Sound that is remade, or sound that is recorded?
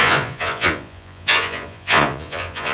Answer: remade